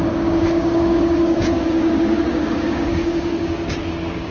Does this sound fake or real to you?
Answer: fake